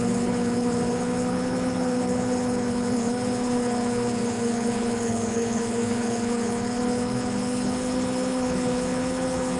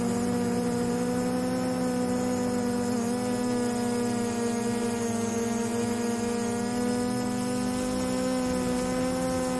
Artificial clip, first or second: first